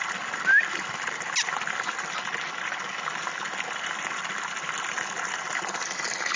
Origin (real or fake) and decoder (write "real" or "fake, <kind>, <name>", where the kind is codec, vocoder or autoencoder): real